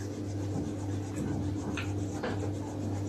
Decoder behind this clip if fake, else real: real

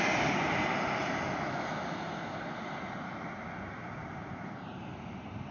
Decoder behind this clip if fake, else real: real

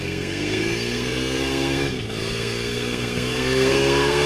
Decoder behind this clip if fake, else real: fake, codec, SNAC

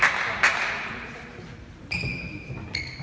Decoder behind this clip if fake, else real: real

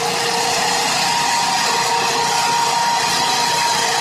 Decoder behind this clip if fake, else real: real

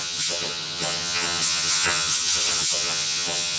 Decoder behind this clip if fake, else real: fake, vocoder, HiFi-GAN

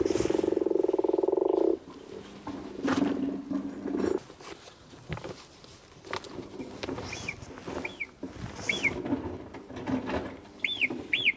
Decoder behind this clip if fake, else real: real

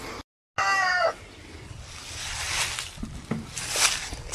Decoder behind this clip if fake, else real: real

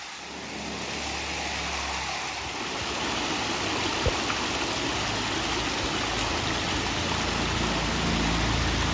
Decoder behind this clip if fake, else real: real